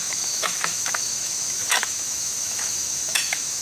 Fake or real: fake